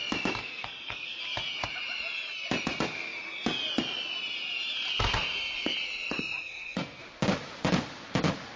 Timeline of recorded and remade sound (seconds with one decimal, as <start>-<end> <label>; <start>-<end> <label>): 0.0-0.4 recorded; 0.4-1.2 remade; 1.2-6.4 recorded; 6.4-7.0 remade; 7.0-8.6 recorded

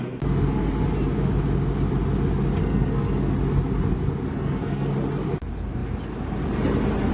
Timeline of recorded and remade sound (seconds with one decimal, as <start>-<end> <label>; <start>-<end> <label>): 0.0-2.6 recorded; 2.6-3.3 remade; 3.3-4.3 recorded; 4.3-4.9 remade; 4.9-7.1 recorded

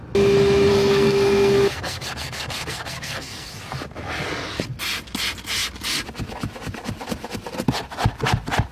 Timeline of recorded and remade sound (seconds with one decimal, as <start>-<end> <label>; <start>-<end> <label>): 0.0-0.7 recorded; 0.7-3.5 remade; 3.5-8.7 recorded

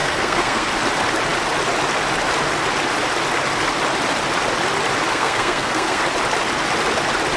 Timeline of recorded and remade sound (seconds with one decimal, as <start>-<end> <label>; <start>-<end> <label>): 0.0-0.7 remade; 0.7-5.1 recorded; 5.1-6.0 remade; 6.0-7.4 recorded

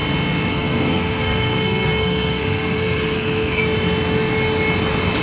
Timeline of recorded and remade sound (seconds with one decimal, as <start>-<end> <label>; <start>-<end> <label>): 0.0-0.5 recorded; 0.5-3.6 remade; 3.6-5.2 recorded

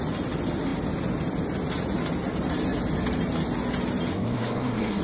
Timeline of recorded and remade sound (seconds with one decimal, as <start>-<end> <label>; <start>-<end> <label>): 0.0-4.1 recorded; 4.1-5.0 remade